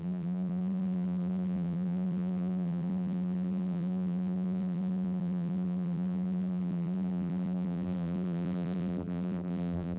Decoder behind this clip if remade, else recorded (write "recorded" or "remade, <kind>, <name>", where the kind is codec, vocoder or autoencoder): remade, vocoder, BigVGAN v2